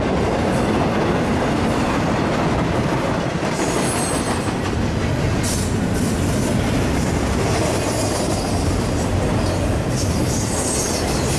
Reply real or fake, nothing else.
real